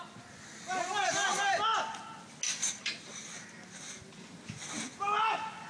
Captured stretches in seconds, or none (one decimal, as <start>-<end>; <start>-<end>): 0.0-5.7